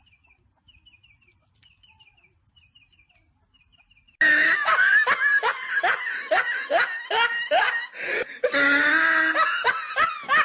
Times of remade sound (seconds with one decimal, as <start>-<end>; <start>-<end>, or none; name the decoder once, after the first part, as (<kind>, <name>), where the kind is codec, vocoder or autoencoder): none